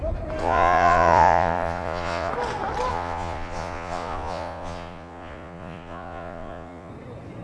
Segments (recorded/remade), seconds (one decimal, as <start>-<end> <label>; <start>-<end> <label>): 0.0-0.4 recorded; 0.4-2.3 remade; 2.3-2.9 recorded; 2.9-6.9 remade; 6.9-7.4 recorded